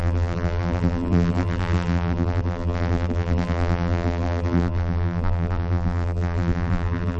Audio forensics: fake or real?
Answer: fake